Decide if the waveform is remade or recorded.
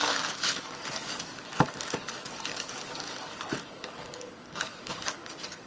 remade